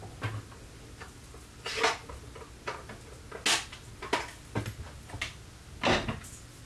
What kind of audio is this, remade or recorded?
recorded